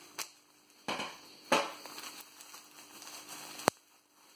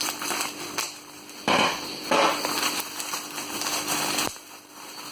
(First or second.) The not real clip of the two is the second